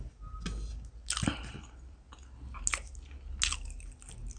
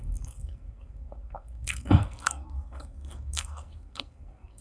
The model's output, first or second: second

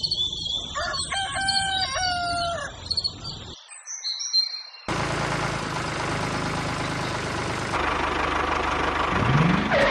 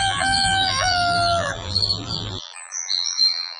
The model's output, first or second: second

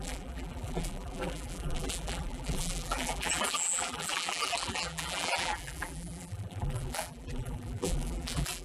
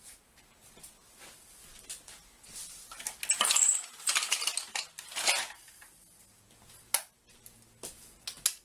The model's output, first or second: first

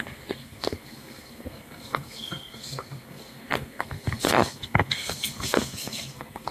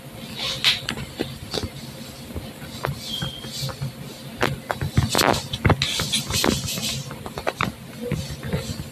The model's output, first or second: first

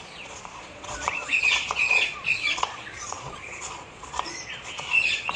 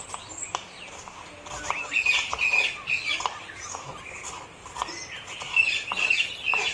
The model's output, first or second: first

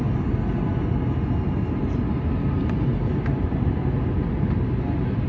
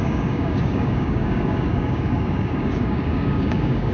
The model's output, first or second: second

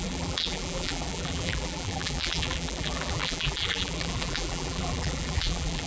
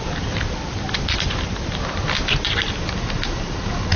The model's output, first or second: first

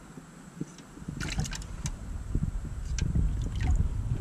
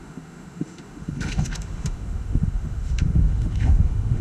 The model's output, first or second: second